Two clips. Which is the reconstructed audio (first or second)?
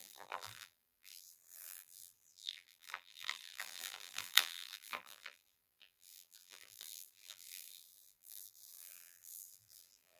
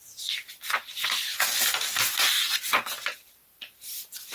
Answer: first